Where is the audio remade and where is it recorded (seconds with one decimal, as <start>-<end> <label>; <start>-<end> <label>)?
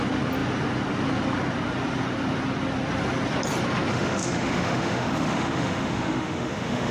0.0-3.9 recorded; 3.9-6.9 remade